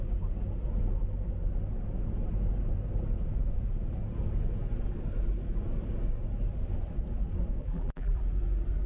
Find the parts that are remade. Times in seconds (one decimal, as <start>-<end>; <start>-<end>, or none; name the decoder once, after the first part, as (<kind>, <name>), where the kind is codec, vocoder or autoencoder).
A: 7.6-8.2 (vocoder, BigVGAN v2)